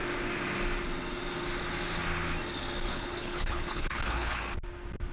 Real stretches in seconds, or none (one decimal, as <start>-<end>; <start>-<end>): 0.0-2.9; 4.4-5.1